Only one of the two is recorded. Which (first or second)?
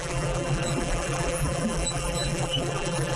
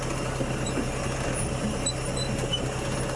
second